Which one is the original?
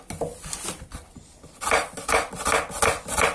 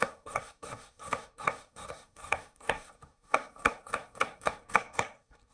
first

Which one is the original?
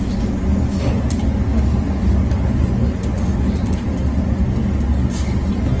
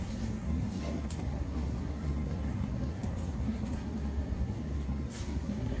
first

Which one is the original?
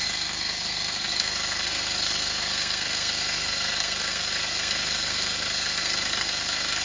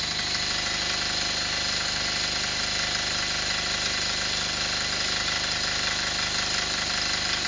second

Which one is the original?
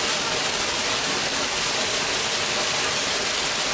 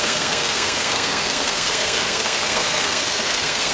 first